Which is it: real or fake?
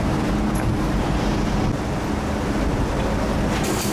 real